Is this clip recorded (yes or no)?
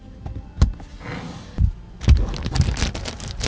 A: yes